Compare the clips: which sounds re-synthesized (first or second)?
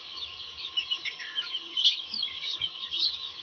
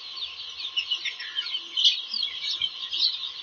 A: first